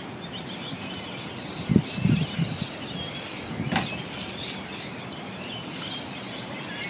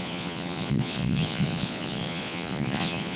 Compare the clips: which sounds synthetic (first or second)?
second